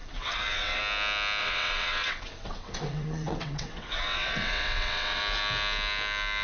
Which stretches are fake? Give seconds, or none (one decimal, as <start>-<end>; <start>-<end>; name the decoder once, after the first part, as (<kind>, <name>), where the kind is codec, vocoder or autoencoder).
0.0-0.8 (vocoder, WaveNeXt); 1.4-5.2